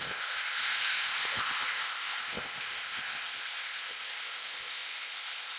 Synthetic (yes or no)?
yes